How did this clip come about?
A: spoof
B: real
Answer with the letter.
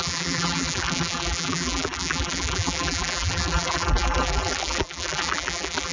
A